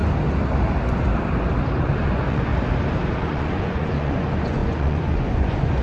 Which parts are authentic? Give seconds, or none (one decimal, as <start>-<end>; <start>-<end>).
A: 0.0-1.8; 2.5-3.2